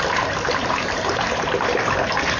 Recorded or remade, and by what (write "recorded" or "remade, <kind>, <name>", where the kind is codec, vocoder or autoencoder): remade, vocoder, BigVGAN v2